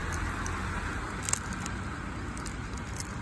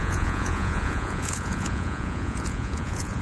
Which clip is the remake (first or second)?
second